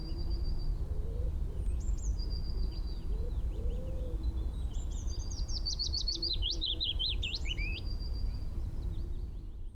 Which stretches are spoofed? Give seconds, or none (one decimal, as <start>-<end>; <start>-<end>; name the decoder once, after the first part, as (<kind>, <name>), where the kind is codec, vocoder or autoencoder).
1.1-9.7 (vocoder, Vocos)